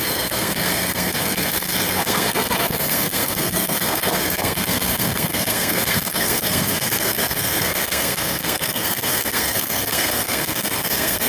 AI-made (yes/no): yes